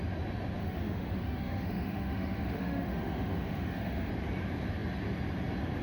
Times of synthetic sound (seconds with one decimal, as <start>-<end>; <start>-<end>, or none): 0.6-4.1